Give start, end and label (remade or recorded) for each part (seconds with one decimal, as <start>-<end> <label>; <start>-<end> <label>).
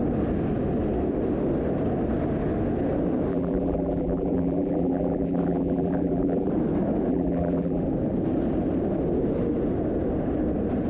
0.0-3.3 recorded; 3.3-6.5 remade; 6.5-7.1 recorded; 7.1-7.8 remade; 7.8-10.9 recorded